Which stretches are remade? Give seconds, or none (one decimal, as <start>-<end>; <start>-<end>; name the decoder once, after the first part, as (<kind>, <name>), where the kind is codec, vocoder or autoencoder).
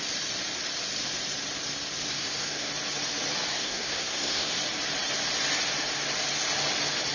2.1-2.7 (codec, SNAC); 3.5-4.5